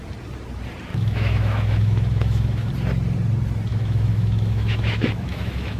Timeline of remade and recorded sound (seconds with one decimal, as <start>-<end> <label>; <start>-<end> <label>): 0.0-0.9 recorded; 0.9-2.7 remade; 2.7-3.7 recorded; 3.7-5.8 remade